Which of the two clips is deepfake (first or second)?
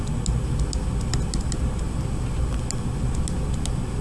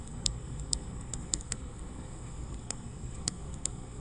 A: second